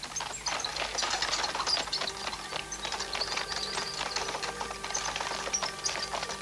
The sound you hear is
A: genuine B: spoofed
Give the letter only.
A